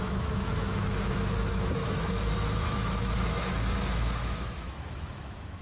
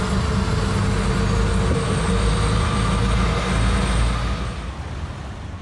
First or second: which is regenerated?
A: first